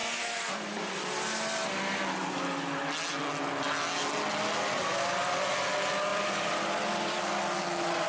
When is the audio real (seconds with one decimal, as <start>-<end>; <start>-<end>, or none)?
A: 0.9-6.1; 7.2-8.1